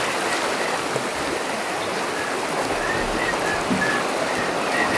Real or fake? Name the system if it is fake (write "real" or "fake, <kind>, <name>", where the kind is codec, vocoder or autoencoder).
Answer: real